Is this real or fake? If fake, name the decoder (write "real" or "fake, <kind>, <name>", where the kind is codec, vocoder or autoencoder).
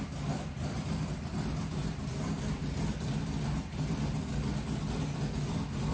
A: real